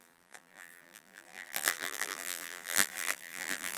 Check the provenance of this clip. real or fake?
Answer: fake